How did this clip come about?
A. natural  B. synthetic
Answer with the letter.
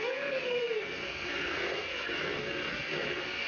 B